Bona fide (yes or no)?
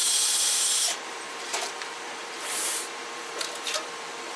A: no